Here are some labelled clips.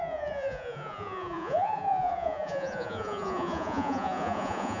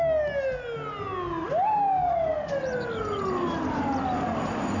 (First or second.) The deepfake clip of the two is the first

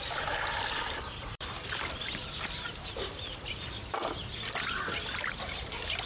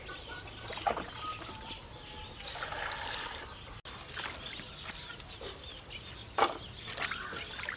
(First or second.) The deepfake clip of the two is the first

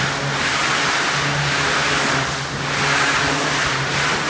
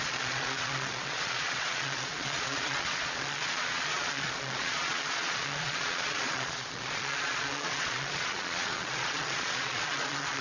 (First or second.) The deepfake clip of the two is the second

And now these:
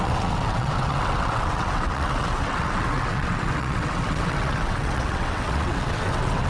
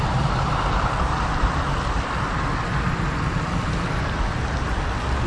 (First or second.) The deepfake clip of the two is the first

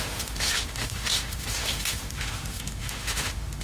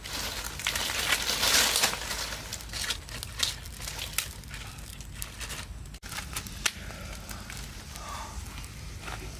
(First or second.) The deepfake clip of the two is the first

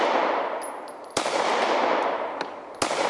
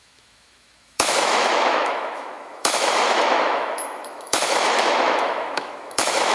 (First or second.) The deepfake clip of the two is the second